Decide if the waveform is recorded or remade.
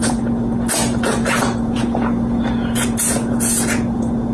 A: remade